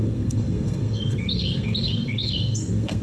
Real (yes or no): no